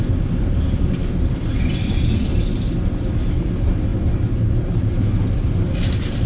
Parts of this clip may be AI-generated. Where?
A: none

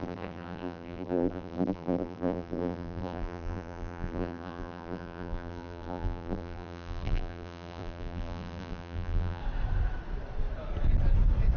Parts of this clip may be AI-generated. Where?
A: 0.0-9.4

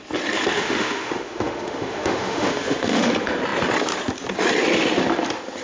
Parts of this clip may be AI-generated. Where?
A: 0.5-3.1

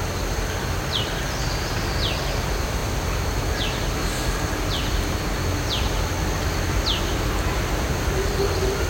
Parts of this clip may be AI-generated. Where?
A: none

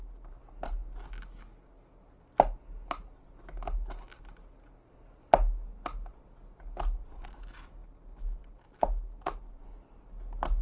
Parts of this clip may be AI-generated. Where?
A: none

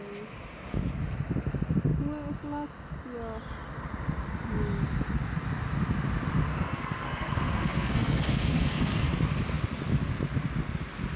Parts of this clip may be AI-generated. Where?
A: 6.5-9.1

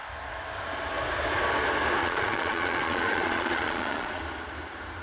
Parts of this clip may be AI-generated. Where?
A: 2.0-4.2